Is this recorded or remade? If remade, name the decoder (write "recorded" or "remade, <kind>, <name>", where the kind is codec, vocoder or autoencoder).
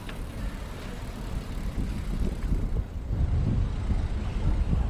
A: recorded